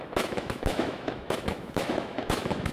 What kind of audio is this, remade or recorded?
remade